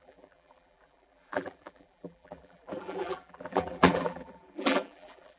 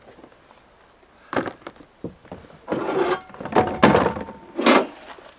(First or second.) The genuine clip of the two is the second